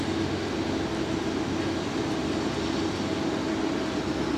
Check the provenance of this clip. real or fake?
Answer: real